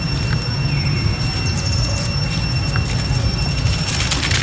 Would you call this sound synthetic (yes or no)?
no